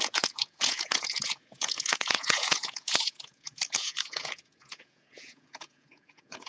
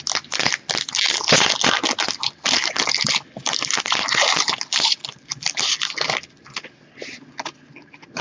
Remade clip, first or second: first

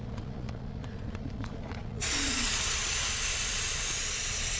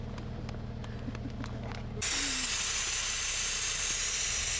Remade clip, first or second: first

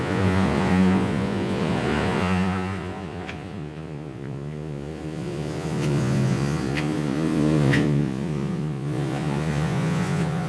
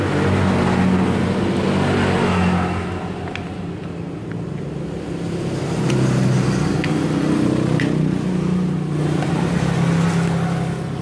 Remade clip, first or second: first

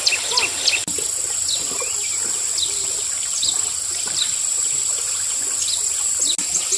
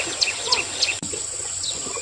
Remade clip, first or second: second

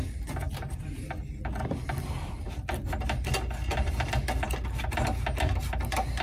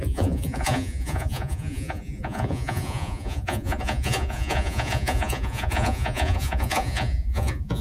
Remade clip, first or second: second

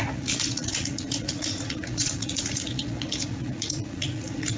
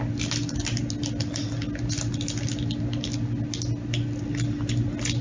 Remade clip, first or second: first